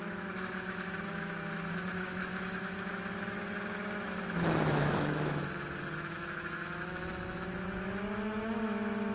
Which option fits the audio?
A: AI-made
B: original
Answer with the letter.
A